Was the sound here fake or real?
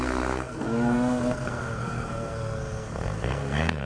fake